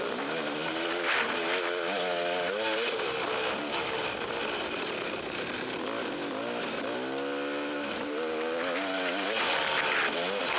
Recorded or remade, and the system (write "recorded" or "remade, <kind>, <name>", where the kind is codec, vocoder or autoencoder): recorded